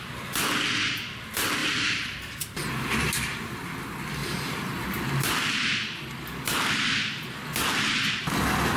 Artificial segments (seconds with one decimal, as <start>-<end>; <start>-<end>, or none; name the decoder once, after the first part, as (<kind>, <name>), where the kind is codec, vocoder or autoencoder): 1.6-3.6 (vocoder, BigVGAN v2); 4.2-5.0